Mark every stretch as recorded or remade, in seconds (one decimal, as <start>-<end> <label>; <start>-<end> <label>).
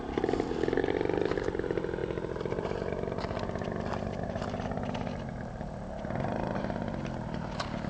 0.0-7.9 recorded